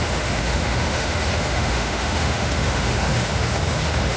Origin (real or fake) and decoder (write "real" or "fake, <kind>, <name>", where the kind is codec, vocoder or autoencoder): fake, autoencoder, DAC-VAE